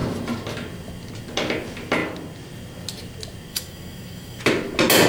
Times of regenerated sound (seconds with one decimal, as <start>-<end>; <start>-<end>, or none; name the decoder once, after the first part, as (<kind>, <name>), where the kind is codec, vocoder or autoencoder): 3.5-4.4 (autoencoder, DAC-VAE)